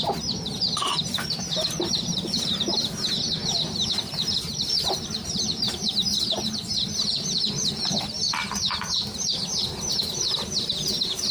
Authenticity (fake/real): fake